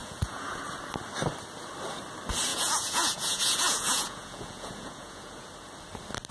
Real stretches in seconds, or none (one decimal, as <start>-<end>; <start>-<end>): 0.6-2.5; 5.5-6.3